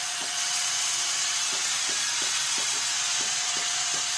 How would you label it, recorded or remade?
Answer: remade